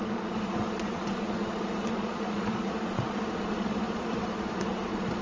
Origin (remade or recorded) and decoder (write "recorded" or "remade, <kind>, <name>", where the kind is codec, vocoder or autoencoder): remade, vocoder, Vocos